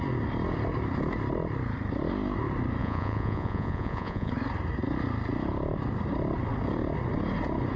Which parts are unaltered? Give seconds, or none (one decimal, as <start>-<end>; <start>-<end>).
0.0-2.8; 4.3-7.8